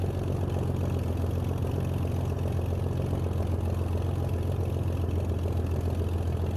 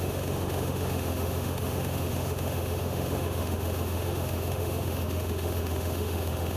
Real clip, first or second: first